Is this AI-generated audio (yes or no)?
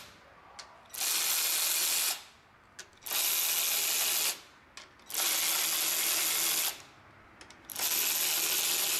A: no